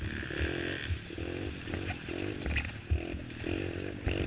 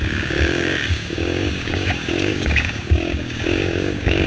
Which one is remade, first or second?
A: second